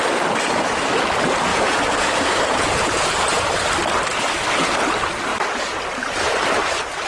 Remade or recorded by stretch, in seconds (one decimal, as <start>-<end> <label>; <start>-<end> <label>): 0.0-1.5 recorded; 1.5-3.4 remade; 3.4-7.1 recorded